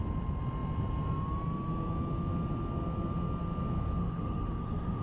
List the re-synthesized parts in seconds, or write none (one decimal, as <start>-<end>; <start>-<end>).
4.0-5.0

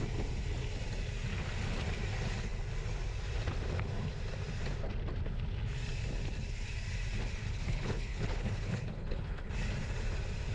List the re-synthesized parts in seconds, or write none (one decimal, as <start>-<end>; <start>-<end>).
7.4-9.5

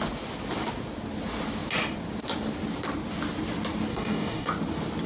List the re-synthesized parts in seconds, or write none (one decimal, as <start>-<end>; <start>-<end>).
3.9-4.5

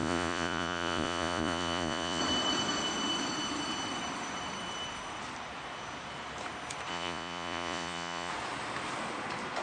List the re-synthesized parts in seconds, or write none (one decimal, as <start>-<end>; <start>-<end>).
0.0-2.2; 6.9-8.3

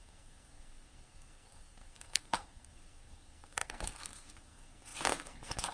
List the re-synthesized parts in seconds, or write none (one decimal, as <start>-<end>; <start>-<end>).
0.0-5.7

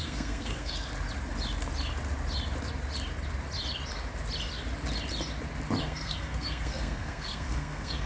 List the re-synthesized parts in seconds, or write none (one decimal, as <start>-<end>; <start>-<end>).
0.0-0.9; 5.8-8.1

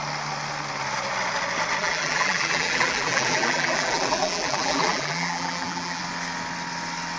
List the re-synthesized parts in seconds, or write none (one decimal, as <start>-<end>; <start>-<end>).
1.8-6.0